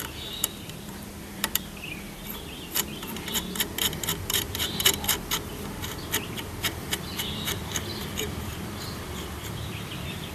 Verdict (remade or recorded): remade